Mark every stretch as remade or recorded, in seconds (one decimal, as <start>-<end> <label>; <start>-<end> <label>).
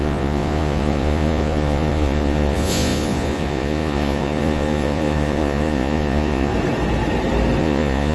0.0-6.5 remade; 6.5-7.6 recorded; 7.6-8.1 remade